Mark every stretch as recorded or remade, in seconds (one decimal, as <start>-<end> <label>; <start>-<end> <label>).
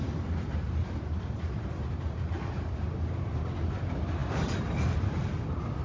0.0-0.8 recorded; 0.8-1.6 remade; 1.6-4.2 recorded; 4.2-4.7 remade; 4.7-5.8 recorded